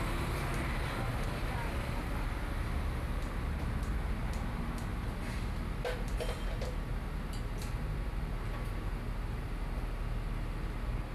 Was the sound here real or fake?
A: real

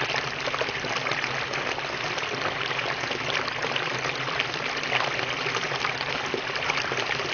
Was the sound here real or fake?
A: real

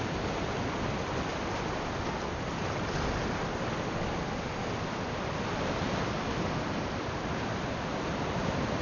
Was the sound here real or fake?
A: real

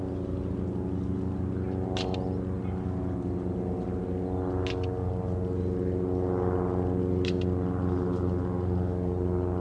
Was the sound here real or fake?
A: real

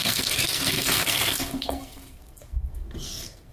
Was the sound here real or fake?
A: fake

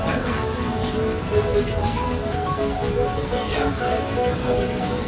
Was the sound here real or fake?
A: fake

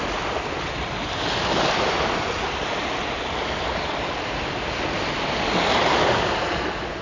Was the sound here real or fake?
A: real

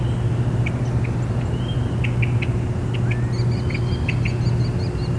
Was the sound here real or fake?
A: real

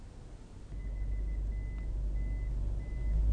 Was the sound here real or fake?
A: real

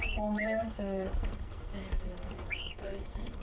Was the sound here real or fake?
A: fake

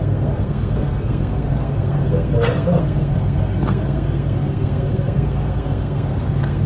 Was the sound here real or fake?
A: fake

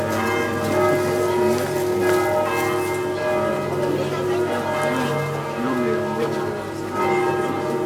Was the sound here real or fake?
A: real